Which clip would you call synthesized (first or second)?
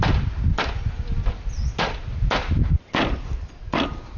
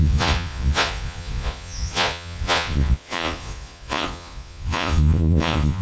second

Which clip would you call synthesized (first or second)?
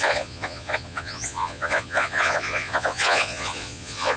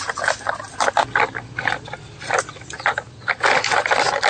first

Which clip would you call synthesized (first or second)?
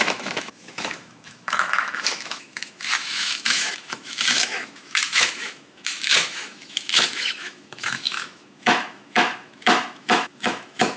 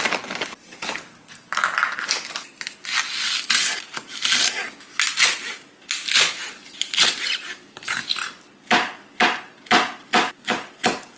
first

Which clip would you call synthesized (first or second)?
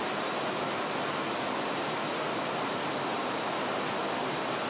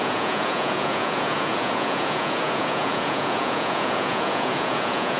second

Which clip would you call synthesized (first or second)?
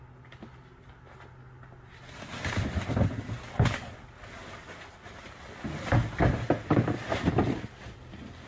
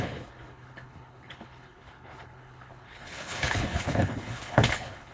second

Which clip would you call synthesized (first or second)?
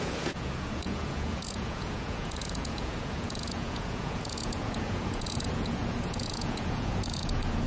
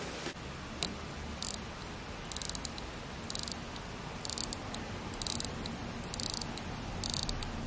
first